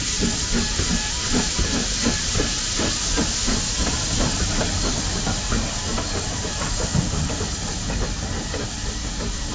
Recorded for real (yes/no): yes